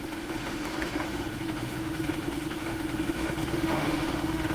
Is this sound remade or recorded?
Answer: remade